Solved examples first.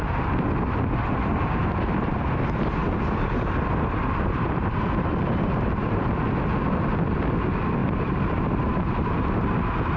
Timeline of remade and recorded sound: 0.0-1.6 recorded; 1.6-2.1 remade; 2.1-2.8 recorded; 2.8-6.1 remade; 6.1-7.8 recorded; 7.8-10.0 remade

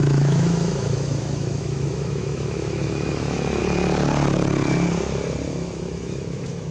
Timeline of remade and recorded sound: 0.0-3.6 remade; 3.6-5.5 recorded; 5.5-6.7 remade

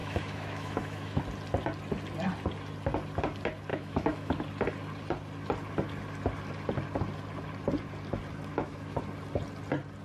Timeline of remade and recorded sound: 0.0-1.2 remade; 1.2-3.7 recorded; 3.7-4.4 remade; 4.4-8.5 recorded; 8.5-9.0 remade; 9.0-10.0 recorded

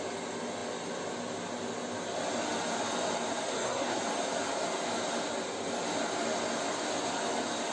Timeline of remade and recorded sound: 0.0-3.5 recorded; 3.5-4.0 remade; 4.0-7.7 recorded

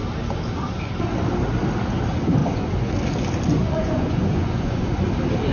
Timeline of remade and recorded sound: 0.0-2.4 recorded; 2.4-3.0 remade; 3.0-3.6 recorded; 3.6-5.0 remade; 5.0-5.5 recorded